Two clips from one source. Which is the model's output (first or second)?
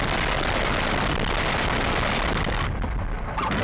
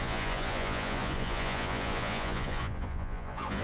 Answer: second